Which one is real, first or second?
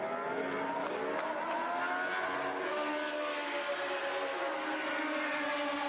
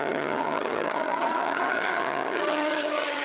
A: first